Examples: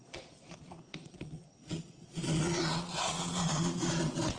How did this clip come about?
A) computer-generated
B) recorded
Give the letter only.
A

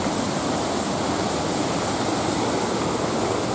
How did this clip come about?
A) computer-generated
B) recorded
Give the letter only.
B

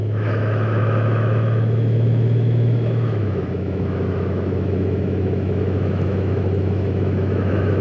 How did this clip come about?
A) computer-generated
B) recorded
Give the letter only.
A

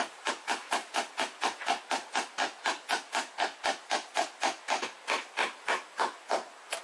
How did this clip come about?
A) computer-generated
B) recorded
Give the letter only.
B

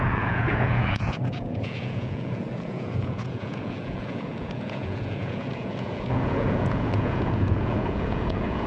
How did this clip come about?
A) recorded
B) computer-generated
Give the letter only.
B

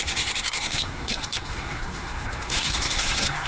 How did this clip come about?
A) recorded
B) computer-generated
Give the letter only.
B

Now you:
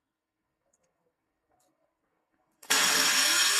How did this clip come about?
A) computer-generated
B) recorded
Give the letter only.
A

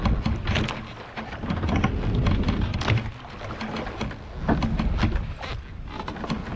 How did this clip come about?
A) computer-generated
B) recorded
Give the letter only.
B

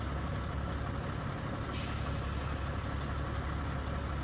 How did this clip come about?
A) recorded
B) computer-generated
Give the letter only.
A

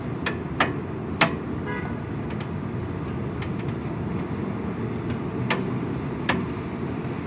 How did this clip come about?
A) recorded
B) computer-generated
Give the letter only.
A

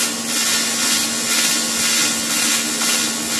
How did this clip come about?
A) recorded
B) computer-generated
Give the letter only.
A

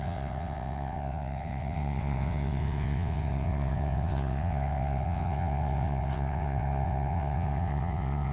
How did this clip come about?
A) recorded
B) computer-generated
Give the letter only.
B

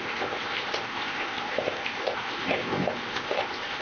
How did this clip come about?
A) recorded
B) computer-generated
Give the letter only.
B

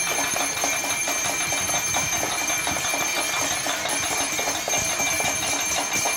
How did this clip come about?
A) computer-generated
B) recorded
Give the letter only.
B